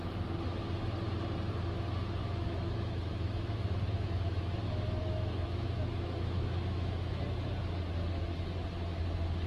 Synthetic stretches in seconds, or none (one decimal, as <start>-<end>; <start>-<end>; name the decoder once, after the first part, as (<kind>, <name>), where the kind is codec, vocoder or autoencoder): 2.2-7.2 (autoencoder, DAC-VAE)